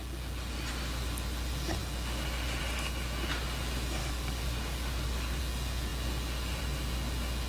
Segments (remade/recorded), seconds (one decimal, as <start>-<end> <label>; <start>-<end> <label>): 0.0-4.0 recorded; 4.0-5.4 remade; 5.4-7.5 recorded